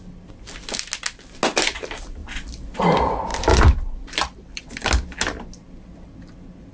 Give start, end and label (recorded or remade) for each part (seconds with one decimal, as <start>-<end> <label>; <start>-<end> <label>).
0.0-2.2 recorded; 2.2-2.8 remade; 2.8-3.3 recorded; 3.3-4.6 remade; 4.6-6.7 recorded